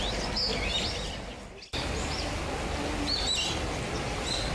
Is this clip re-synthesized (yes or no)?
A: no